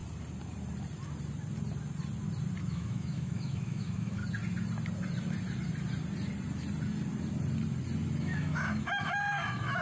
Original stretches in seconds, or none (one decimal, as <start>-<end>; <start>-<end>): 0.0-2.6; 4.2-8.2